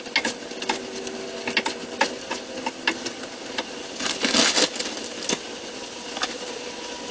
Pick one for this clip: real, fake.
real